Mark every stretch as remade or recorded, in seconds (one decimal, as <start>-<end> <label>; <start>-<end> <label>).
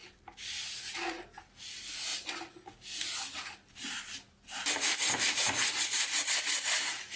0.0-7.2 recorded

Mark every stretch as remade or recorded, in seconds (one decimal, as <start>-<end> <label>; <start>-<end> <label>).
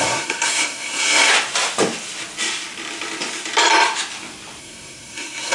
0.0-1.3 remade; 1.3-4.6 recorded; 4.6-5.5 remade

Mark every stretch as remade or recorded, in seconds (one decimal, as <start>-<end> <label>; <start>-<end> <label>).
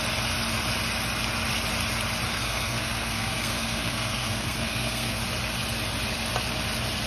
0.0-2.3 recorded; 2.3-5.2 remade; 5.2-7.1 recorded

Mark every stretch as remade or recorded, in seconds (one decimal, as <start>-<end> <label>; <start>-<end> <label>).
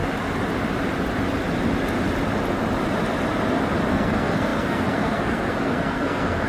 0.0-3.9 recorded; 3.9-6.5 remade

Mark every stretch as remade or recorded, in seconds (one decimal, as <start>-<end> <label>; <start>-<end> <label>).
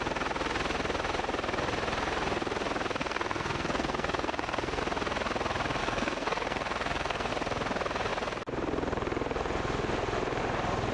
0.0-3.0 recorded; 3.0-4.8 remade; 4.8-5.8 recorded; 5.8-7.3 remade; 7.3-10.9 recorded